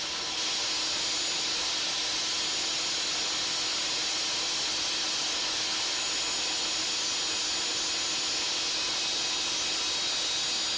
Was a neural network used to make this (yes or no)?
no